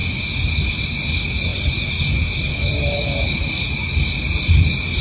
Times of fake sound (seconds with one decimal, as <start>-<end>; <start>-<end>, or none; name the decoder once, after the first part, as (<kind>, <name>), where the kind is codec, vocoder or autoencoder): none